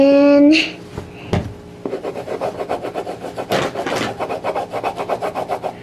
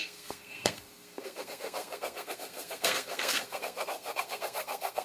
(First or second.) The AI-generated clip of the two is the second